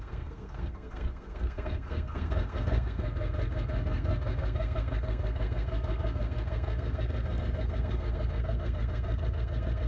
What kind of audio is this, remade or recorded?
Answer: remade